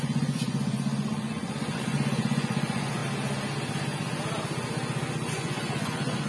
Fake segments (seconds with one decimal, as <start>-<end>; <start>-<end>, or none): 0.0-3.0; 5.3-6.3